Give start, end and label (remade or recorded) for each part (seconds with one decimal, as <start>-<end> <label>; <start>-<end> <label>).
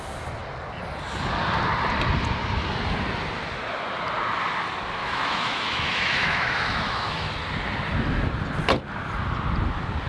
0.0-5.0 recorded; 5.0-7.3 remade; 7.3-10.1 recorded